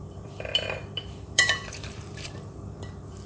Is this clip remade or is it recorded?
remade